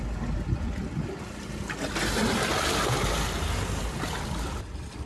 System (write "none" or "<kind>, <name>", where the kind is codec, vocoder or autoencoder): none